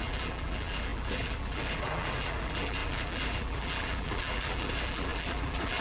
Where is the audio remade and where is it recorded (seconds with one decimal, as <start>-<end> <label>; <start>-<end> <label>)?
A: 0.0-5.8 remade

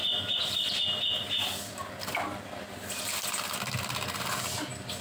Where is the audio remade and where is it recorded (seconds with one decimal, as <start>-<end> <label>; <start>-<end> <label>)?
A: 0.0-5.0 recorded

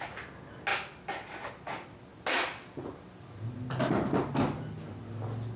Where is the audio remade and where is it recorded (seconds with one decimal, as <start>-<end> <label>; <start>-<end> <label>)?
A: 0.0-5.6 recorded